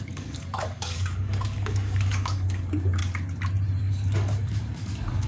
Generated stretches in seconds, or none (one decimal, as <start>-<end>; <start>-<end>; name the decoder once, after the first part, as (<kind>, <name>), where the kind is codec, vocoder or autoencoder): 0.0-3.0 (codec, DAC); 3.8-5.3